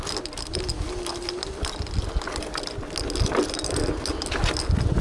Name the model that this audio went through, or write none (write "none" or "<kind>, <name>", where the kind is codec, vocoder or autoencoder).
none